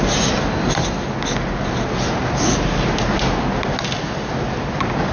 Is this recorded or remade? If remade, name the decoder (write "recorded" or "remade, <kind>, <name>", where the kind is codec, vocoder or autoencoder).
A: recorded